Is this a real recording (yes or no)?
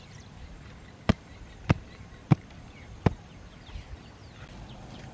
yes